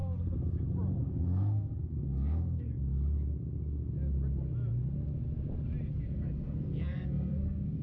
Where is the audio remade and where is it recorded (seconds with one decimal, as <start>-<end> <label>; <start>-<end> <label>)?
0.0-1.0 recorded; 1.0-2.7 remade; 2.7-6.0 recorded; 6.0-7.8 remade